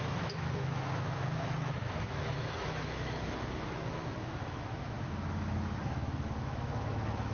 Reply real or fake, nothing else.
fake